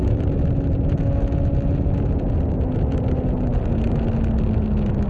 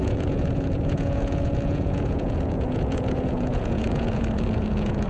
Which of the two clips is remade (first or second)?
second